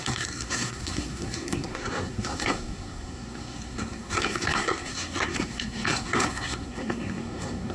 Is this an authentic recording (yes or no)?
no